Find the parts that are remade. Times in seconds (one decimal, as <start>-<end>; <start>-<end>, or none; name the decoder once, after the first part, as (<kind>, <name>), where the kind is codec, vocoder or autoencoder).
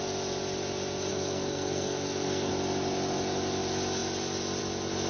1.1-2.5 (codec, SNAC)